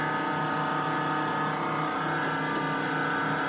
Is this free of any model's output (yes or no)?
yes